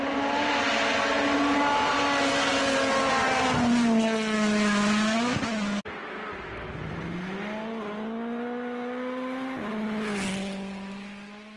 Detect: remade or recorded recorded